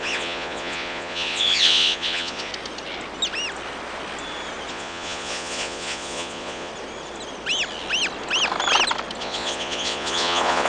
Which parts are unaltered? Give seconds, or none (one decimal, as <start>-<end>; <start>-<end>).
2.5-4.7; 6.7-9.2